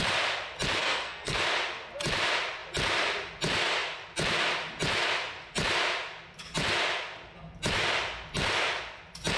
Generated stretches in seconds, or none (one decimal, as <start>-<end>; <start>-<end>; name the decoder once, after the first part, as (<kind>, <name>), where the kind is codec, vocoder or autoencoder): 0.8-1.4 (codec, SNAC)